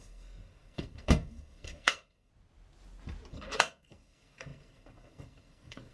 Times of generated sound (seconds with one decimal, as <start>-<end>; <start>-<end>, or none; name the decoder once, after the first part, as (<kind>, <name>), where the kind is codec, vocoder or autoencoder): 0.0-2.3 (codec, SNAC); 3.3-5.9